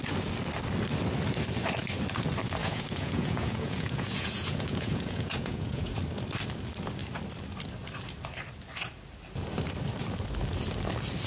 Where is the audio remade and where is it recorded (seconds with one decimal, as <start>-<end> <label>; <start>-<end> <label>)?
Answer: 0.0-2.6 recorded; 2.6-6.0 remade; 6.0-11.3 recorded